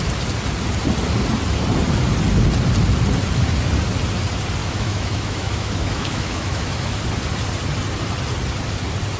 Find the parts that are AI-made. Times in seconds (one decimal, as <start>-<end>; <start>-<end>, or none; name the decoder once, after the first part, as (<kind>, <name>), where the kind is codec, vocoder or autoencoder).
4.6-7.0 (autoencoder, DAC-VAE)